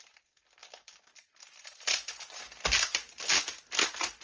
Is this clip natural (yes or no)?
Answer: yes